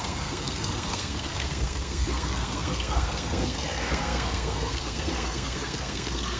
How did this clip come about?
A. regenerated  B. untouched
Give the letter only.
A